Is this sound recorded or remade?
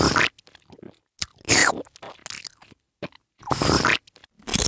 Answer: recorded